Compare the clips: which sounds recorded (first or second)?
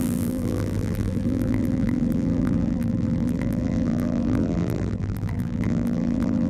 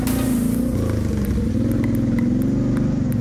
second